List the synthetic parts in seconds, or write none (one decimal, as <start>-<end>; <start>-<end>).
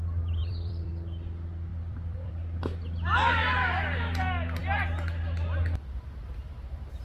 0.4-0.9; 1.7-2.3